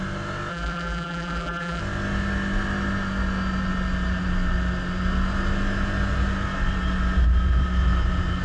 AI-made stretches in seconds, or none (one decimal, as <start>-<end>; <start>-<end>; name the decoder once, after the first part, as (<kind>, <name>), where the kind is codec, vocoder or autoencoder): 0.5-1.8 (vocoder, BigVGAN v2)